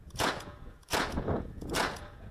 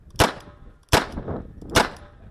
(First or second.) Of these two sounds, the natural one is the second